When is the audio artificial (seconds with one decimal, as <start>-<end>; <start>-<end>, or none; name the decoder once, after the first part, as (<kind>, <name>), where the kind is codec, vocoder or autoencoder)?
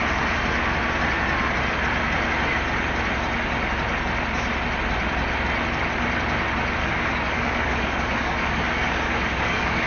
6.8-9.9 (codec, DAC)